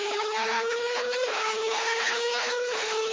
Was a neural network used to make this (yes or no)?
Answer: yes